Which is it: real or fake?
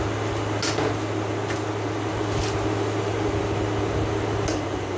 real